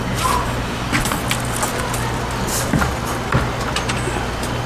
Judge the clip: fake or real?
real